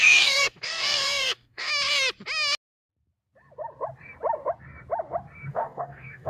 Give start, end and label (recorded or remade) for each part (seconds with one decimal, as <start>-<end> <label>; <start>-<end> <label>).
0.0-1.7 remade; 1.7-5.5 recorded; 5.5-6.3 remade